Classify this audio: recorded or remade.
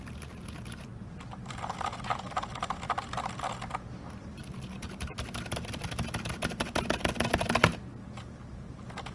recorded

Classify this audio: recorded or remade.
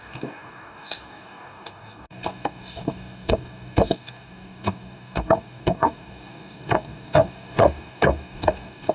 remade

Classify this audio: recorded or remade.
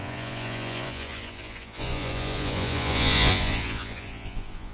remade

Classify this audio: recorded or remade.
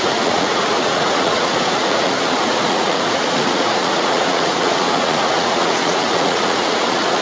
remade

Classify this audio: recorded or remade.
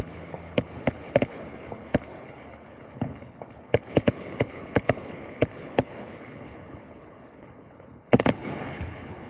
remade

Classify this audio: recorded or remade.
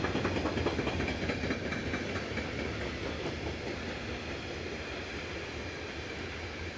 recorded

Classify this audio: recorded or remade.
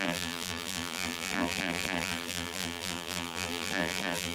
remade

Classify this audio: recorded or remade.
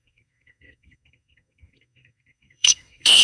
remade